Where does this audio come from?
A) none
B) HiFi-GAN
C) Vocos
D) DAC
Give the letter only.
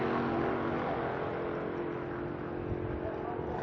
A